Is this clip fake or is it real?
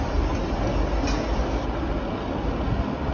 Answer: real